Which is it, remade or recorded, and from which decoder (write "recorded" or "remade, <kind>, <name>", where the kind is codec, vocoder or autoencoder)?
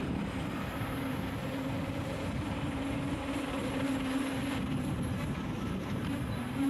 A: remade, vocoder, BigVGAN v2